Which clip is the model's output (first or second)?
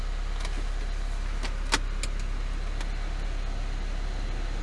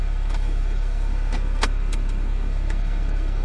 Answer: second